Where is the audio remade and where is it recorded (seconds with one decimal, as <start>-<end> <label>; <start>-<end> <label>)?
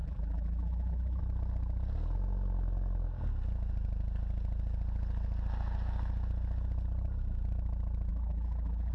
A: 0.0-1.2 remade; 1.2-8.1 recorded; 8.1-8.9 remade